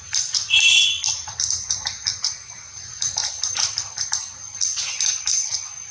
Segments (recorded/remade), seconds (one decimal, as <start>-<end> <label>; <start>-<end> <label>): 0.0-5.9 recorded